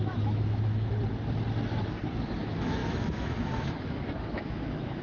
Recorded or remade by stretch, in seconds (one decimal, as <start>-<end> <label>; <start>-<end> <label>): 0.0-0.9 remade; 0.9-2.4 recorded; 2.4-5.0 remade